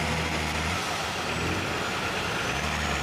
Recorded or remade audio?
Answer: recorded